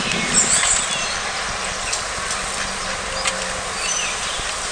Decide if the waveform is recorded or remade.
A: recorded